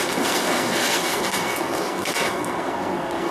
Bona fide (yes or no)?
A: no